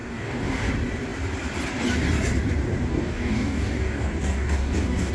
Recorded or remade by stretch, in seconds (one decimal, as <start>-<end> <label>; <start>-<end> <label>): 0.0-0.7 remade; 0.7-2.9 recorded; 2.9-5.1 remade